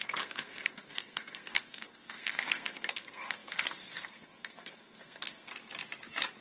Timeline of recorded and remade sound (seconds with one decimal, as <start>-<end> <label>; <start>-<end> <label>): 0.0-5.5 remade; 5.5-6.4 recorded